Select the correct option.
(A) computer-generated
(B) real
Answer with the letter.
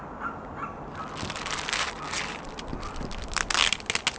B